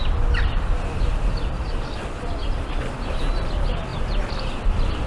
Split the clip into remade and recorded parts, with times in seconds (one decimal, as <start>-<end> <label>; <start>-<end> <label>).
0.0-5.1 recorded